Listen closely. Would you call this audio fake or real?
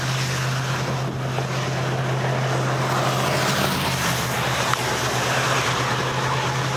real